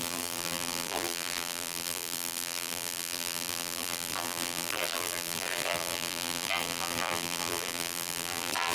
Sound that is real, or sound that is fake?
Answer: fake